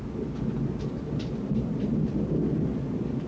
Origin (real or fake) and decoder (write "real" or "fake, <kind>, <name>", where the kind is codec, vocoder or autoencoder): real